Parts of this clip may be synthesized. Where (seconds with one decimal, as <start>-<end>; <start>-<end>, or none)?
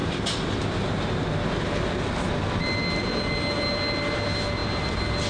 0.0-0.6